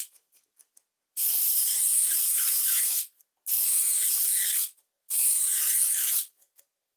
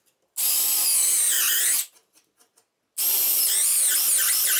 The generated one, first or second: first